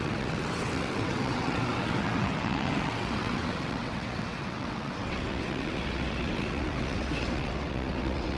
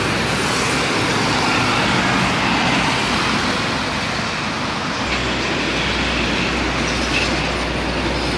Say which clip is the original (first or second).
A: second